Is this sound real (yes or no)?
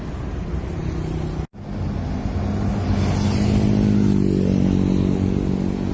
yes